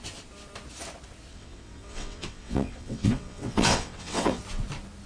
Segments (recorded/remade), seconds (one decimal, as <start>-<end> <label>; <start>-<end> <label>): 0.0-1.3 recorded; 1.3-4.4 remade; 4.4-5.1 recorded